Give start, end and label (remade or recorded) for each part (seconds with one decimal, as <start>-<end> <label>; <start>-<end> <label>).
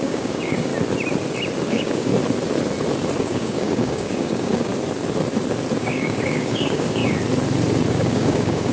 0.0-0.7 remade; 0.7-1.7 recorded; 1.7-2.1 remade; 2.1-3.2 recorded; 3.2-4.7 remade; 4.7-5.8 recorded; 5.8-7.0 remade; 7.0-7.9 recorded; 7.9-8.7 remade